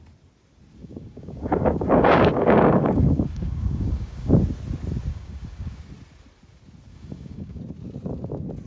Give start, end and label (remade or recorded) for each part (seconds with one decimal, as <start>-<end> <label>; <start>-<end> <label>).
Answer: 0.0-0.8 recorded; 0.8-4.3 remade; 4.3-5.1 recorded; 5.1-5.8 remade; 5.8-6.9 recorded; 6.9-7.6 remade; 7.6-8.7 recorded